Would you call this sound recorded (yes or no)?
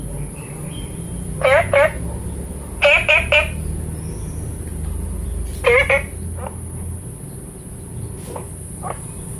yes